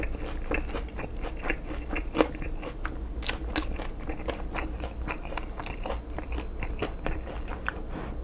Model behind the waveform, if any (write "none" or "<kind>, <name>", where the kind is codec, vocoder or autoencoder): none